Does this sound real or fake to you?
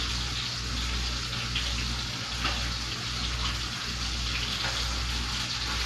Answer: real